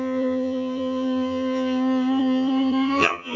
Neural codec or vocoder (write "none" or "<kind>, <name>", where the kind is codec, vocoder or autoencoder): vocoder, HiFi-GAN